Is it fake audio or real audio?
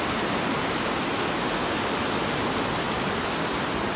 real